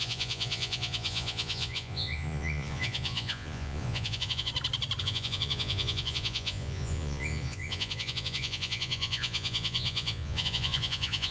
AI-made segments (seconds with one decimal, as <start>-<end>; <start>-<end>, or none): 0.0-4.5; 5.0-11.3